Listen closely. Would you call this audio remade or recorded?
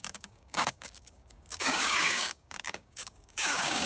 remade